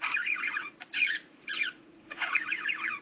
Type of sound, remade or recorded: remade